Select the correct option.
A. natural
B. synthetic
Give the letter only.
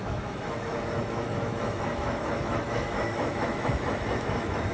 B